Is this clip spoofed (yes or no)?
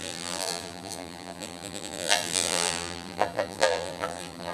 yes